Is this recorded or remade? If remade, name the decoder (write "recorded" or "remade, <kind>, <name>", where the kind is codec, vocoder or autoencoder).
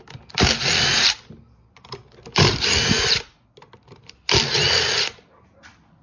recorded